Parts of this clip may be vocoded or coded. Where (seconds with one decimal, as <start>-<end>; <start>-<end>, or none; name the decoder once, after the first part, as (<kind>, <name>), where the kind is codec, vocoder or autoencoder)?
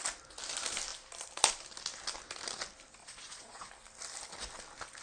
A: 3.0-3.7 (vocoder, Vocos)